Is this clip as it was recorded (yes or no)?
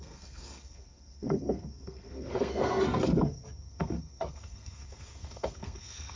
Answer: no